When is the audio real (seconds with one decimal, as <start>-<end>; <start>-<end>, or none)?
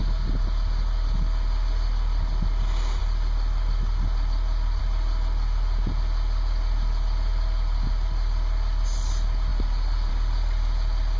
0.0-11.2